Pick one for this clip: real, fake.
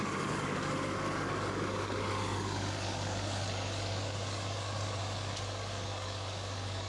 fake